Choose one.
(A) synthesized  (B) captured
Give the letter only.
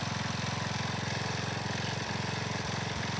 B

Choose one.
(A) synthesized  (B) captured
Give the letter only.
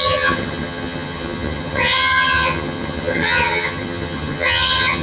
A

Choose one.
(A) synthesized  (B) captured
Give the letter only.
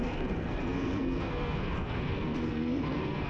A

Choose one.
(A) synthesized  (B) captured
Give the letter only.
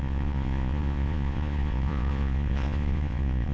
A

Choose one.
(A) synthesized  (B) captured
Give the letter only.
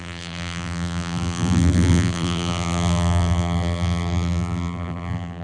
A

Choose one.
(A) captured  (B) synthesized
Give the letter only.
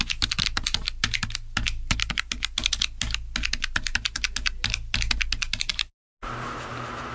A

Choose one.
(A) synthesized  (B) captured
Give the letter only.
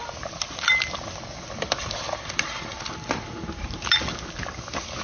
B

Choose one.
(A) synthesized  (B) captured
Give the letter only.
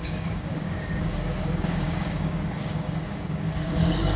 A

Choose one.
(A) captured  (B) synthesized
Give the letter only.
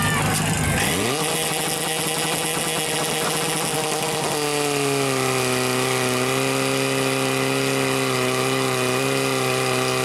A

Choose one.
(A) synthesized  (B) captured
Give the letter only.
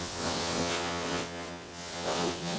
A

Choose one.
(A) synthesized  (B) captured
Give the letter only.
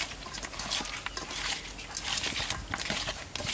B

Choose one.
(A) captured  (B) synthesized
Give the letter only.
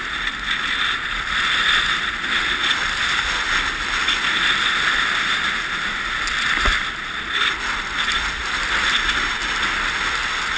A